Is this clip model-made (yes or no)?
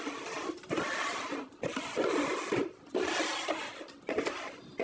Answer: no